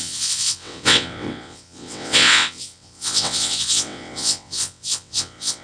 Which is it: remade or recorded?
remade